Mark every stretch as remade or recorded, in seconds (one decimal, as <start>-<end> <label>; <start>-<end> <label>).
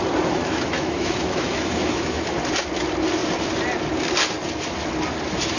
0.0-0.4 recorded; 0.4-2.4 remade; 2.4-5.6 recorded